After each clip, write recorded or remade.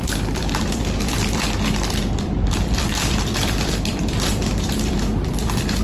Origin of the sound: remade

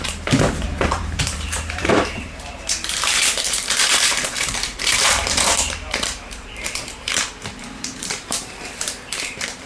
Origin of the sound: remade